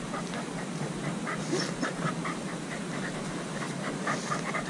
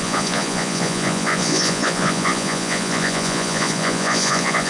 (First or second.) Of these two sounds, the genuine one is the first